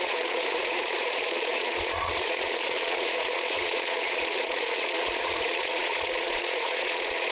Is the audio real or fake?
fake